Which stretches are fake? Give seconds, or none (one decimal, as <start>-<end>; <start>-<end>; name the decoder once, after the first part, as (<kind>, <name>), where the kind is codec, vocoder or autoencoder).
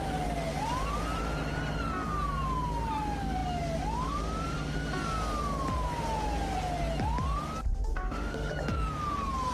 7.9-8.5 (autoencoder, DAC-VAE)